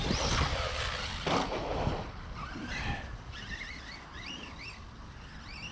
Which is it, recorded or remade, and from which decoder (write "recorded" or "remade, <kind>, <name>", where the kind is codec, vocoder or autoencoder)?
recorded